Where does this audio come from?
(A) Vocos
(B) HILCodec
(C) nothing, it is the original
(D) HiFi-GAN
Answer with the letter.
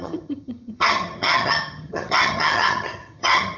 D